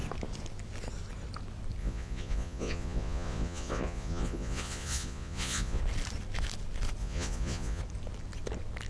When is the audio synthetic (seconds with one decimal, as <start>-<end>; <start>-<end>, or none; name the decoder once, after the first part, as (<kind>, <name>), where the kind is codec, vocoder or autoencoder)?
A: 1.8-5.8 (vocoder, Vocos); 7.0-7.8